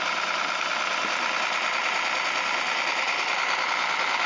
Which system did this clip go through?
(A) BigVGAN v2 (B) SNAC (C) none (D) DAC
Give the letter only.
C